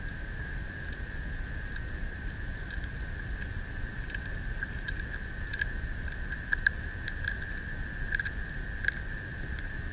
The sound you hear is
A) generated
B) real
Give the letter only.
B